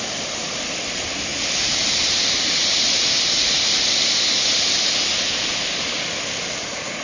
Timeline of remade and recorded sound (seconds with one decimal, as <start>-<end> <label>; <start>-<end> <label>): 0.0-7.0 recorded